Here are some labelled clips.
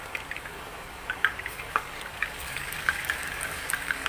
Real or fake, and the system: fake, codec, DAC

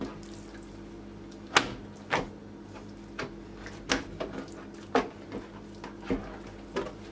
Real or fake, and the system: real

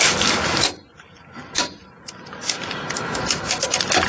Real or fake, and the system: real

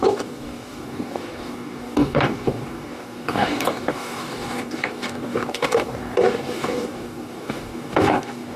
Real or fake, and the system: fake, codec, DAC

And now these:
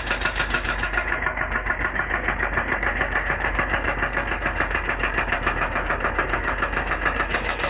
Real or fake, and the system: fake, codec, DAC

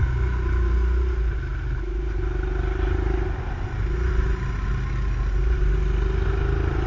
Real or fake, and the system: real